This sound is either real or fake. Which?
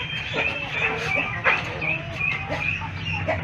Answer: real